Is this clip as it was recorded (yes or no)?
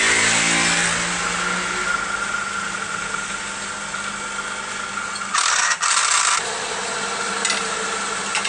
yes